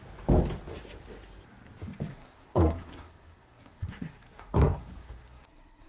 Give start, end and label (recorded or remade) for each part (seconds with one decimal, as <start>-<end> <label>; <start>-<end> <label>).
0.0-2.1 recorded; 2.1-5.9 remade